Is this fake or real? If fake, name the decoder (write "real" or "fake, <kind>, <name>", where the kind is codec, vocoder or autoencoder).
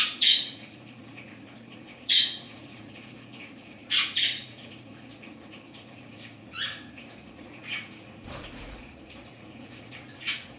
fake, vocoder, Vocos